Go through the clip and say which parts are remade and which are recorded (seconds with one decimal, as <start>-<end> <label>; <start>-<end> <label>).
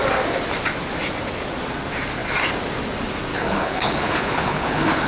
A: 0.0-3.3 recorded; 3.3-5.1 remade